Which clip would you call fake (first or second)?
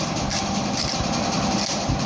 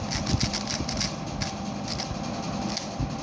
first